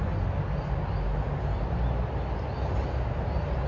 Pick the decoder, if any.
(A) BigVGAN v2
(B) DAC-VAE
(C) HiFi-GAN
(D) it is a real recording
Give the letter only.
D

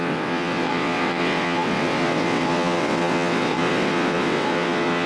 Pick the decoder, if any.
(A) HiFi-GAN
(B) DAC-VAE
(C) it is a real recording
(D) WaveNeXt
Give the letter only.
D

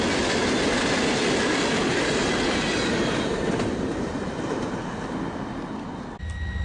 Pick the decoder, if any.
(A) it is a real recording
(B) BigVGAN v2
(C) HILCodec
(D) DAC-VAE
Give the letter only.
A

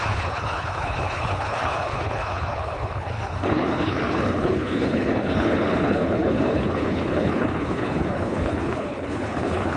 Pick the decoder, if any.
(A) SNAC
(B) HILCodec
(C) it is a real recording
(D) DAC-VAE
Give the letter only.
B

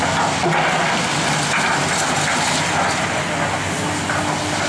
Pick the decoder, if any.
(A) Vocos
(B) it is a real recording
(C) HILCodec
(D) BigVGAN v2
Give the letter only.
B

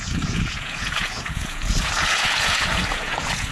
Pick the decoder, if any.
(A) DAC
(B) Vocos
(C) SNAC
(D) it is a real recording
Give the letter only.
B